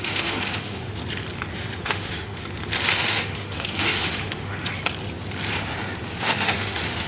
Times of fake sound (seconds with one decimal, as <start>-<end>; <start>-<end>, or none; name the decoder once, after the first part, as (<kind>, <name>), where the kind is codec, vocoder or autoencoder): 0.0-1.0 (autoencoder, DAC-VAE); 1.8-2.4; 3.0-4.8; 6.2-7.1